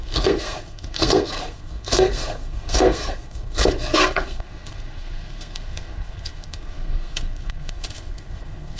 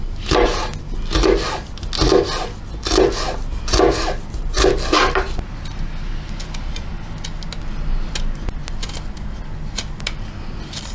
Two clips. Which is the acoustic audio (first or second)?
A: second